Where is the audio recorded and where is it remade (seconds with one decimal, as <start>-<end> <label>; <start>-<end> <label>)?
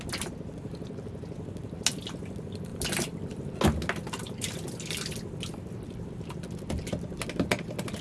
0.0-8.0 recorded